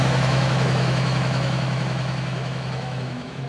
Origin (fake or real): fake